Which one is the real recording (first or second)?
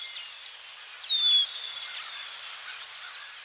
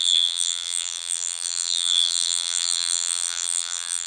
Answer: first